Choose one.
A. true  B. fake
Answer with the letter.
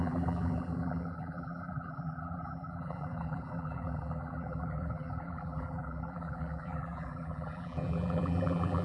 B